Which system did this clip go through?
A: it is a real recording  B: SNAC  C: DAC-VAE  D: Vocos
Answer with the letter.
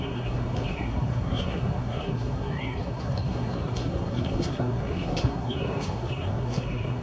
B